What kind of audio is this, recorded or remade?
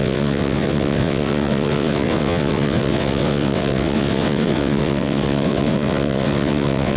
remade